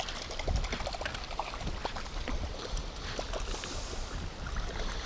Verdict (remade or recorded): recorded